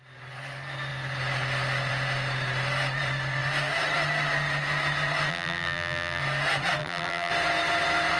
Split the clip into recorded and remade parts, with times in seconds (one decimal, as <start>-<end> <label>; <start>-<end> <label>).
0.0-5.3 recorded; 5.3-6.2 remade; 6.2-6.8 recorded; 6.8-7.3 remade; 7.3-8.2 recorded